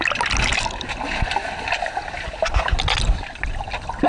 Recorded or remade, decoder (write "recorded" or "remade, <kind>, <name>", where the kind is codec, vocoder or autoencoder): recorded